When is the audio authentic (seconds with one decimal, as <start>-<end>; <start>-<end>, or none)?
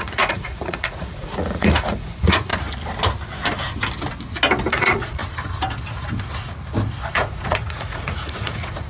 2.5-4.7; 5.2-7.1